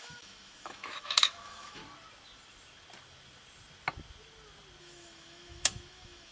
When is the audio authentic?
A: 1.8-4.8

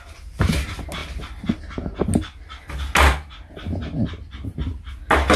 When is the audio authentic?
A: 0.0-5.4

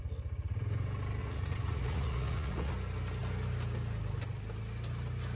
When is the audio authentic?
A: 0.0-1.2; 2.7-5.4

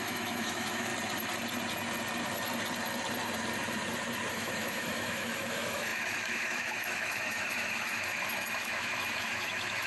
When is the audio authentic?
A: 0.9-4.3